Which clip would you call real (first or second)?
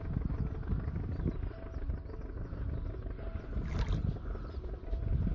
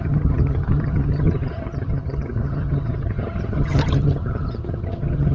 first